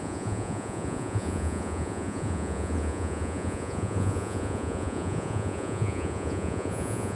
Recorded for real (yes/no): no